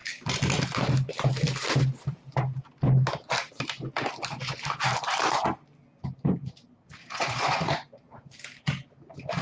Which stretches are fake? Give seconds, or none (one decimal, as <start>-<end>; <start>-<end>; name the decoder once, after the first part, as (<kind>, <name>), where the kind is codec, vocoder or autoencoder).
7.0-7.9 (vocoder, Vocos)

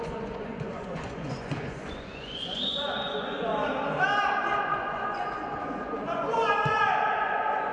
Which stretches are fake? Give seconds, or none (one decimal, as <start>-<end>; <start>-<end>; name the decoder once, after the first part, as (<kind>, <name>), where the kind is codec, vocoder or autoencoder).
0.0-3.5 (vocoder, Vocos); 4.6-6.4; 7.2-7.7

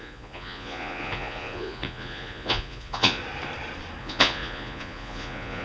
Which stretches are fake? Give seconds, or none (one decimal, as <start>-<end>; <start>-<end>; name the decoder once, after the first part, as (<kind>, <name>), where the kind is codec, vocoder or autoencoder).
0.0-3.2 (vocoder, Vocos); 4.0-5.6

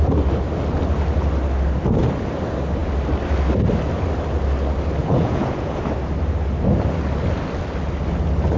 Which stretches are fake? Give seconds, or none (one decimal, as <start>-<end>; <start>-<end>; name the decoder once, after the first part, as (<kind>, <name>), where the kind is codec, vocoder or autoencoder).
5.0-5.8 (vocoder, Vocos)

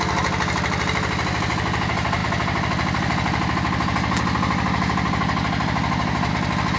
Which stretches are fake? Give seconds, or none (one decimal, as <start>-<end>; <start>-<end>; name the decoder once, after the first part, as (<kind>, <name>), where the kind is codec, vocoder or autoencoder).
none